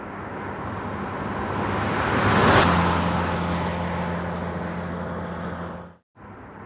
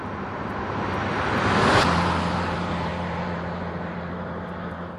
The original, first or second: first